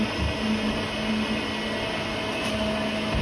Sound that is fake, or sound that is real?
real